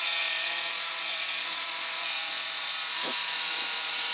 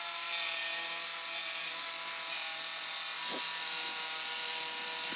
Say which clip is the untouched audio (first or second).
second